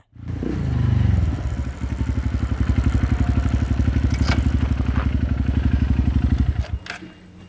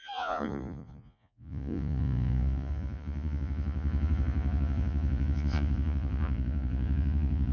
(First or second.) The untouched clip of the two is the first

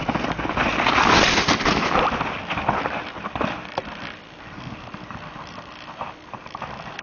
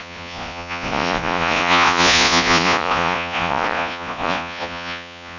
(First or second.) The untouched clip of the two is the first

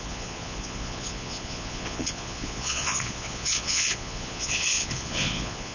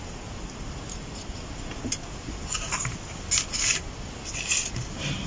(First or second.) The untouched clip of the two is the second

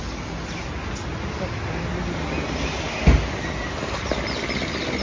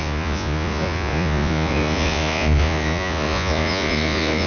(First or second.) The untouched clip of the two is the first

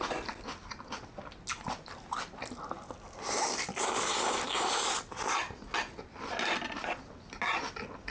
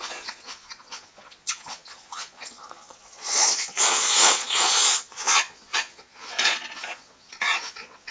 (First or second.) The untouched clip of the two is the first